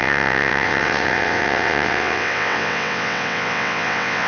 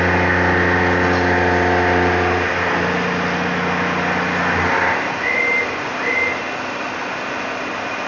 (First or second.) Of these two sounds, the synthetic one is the first